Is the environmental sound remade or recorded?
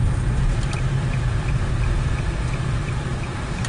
recorded